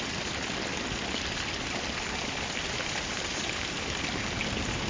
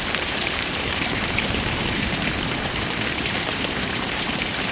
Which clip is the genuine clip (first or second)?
first